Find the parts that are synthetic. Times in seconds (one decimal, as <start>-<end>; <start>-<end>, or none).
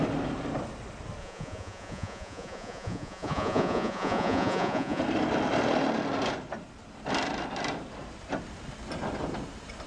1.2-5.0